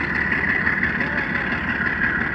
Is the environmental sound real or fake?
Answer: real